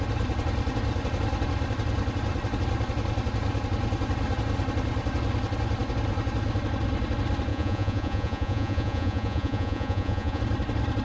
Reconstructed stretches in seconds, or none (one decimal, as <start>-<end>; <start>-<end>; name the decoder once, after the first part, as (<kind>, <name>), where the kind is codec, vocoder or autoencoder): 7.5-10.4 (vocoder, Vocos)